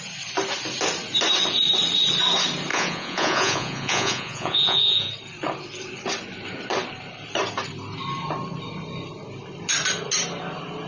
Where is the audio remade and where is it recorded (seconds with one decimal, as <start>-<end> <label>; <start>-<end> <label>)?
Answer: 0.0-2.7 recorded; 2.7-5.1 remade; 5.1-10.9 recorded